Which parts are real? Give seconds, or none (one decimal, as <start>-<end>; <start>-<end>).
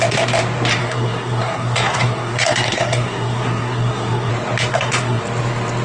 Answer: 0.0-0.8; 4.3-4.7; 5.2-5.8